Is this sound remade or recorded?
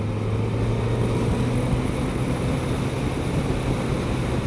recorded